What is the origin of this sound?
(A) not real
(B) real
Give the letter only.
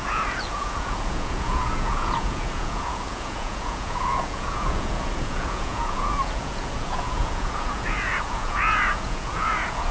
A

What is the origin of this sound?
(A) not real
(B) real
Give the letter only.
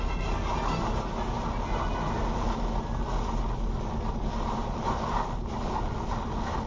B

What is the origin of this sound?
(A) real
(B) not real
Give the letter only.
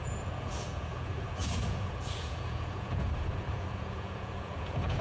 B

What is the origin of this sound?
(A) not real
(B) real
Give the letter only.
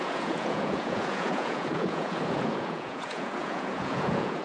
A